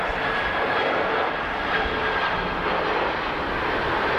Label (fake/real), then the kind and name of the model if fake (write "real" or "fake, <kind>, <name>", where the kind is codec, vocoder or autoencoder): real